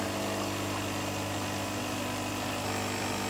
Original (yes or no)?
yes